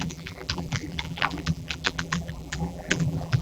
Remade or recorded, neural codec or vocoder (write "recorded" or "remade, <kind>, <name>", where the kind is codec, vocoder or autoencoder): remade, vocoder, BigVGAN v2